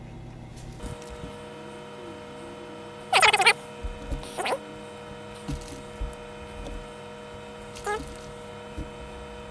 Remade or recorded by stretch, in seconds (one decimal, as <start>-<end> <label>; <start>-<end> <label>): 0.0-9.5 recorded